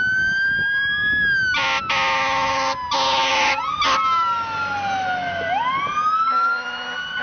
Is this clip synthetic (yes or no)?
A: no